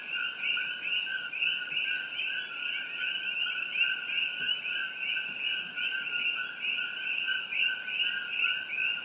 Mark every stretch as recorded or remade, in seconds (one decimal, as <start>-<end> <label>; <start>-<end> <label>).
0.0-1.1 recorded; 1.1-2.5 remade; 2.5-7.3 recorded; 7.3-7.9 remade; 7.9-9.0 recorded